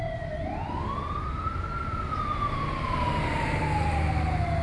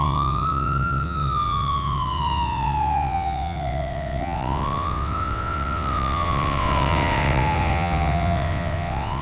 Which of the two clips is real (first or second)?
first